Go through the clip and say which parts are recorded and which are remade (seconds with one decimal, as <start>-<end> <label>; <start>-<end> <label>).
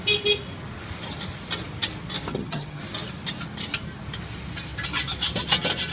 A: 0.0-2.3 recorded; 2.3-2.8 remade; 2.8-5.9 recorded